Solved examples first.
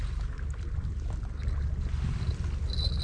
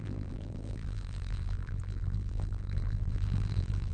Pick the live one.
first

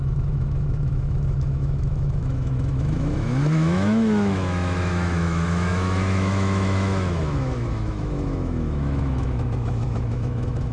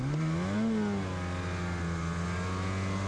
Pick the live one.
second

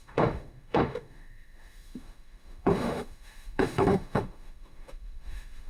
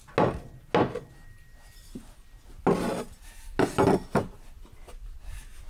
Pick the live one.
second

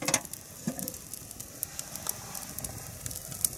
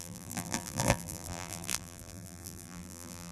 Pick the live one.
first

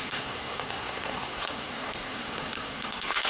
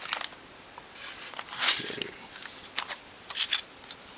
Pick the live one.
second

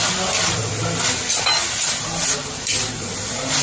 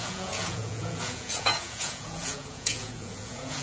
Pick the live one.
first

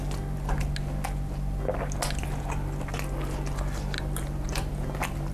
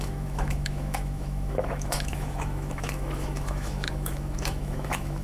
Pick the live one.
first